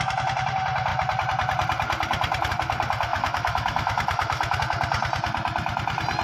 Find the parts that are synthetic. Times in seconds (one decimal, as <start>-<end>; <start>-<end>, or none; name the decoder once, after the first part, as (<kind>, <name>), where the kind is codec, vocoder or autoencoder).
3.1-4.6 (autoencoder, DAC-VAE)